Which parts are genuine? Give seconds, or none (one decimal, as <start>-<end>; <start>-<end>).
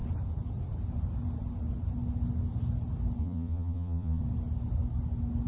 0.0-3.2; 4.2-5.5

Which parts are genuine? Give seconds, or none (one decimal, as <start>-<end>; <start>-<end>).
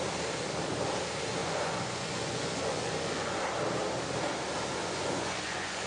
0.0-1.4; 3.4-4.8